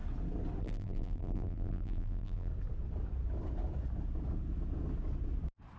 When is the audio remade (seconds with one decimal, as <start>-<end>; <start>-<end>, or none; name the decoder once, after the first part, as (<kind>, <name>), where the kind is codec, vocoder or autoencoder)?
0.6-2.5 (vocoder, BigVGAN v2)